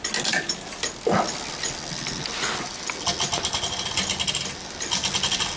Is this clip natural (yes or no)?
yes